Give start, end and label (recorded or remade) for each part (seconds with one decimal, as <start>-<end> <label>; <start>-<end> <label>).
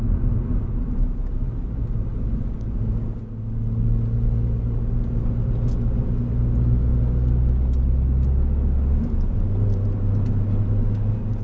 0.0-11.4 recorded